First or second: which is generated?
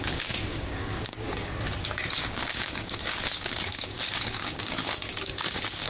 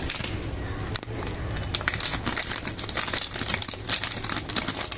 first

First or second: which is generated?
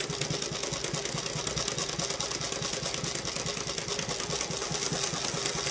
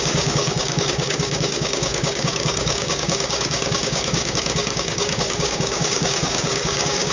second